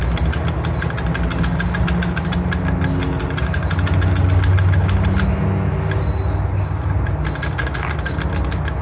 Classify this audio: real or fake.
real